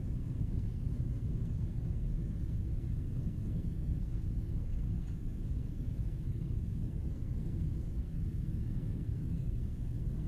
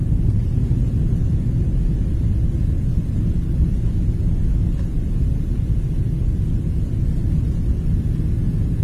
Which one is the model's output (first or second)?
first